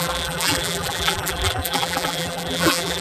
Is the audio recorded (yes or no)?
no